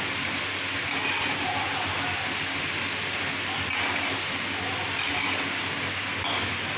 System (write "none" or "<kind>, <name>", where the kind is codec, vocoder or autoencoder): none